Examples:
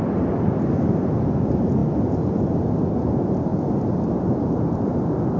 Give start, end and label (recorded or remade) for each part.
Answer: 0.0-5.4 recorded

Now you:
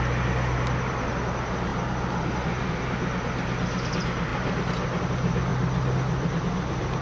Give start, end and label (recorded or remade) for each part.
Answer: 0.0-7.0 recorded